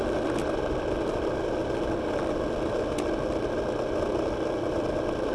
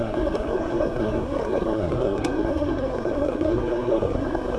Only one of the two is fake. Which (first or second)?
second